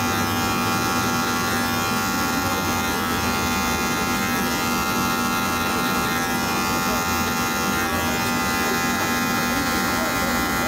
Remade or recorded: recorded